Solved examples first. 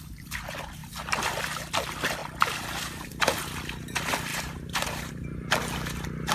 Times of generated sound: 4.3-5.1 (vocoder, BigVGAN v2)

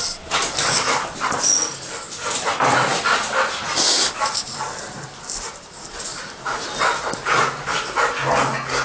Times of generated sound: 2.9-5.6 (vocoder, BigVGAN v2); 6.1-7.4

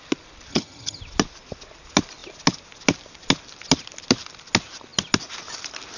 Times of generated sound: 0.5-1.0 (vocoder, HiFi-GAN)

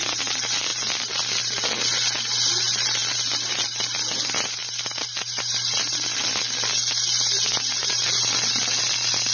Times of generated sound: none